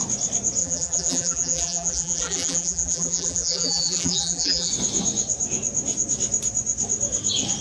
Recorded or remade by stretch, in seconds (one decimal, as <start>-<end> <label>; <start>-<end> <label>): 0.0-0.6 recorded; 0.6-4.7 remade; 4.7-7.6 recorded